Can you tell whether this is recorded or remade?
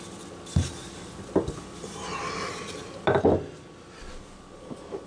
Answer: recorded